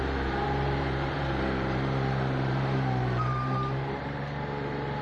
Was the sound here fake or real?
fake